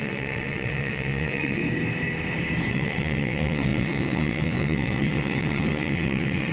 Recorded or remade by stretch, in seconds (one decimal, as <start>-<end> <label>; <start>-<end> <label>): 0.0-1.6 remade; 1.6-2.7 recorded; 2.7-6.5 remade